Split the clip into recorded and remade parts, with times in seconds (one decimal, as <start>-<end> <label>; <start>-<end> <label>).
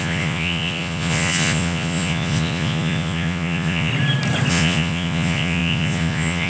0.0-3.9 remade; 3.9-4.5 recorded; 4.5-6.5 remade